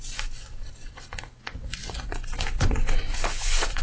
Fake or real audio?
fake